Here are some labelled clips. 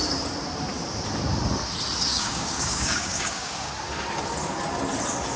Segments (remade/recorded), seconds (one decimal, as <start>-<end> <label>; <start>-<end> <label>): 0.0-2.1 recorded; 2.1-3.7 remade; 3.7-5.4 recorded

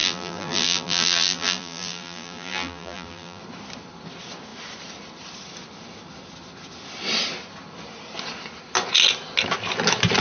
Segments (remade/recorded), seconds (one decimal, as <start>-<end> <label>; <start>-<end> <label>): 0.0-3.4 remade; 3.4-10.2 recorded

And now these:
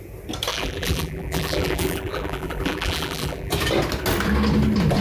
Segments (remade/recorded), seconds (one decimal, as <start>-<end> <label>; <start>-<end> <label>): 0.0-0.5 recorded; 0.5-3.5 remade; 3.5-5.0 recorded

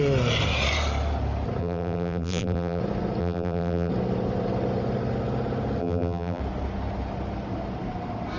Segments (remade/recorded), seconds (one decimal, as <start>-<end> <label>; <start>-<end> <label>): 0.0-1.6 recorded; 1.6-2.8 remade; 2.8-3.2 recorded; 3.2-3.9 remade; 3.9-5.8 recorded; 5.8-6.4 remade; 6.4-8.4 recorded

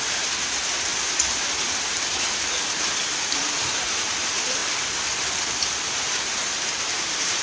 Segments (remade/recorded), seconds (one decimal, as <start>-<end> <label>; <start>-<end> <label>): 0.0-4.6 remade; 4.6-5.5 recorded; 5.5-7.4 remade

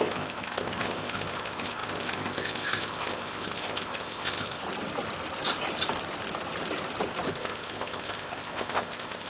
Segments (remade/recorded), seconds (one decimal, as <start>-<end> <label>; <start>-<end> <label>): 0.0-4.6 remade; 4.6-7.3 recorded; 7.3-9.3 remade

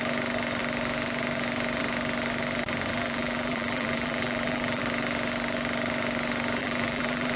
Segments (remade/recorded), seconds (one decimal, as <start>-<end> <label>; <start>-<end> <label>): 0.0-2.9 recorded; 2.9-4.8 remade; 4.8-6.6 recorded; 6.6-7.4 remade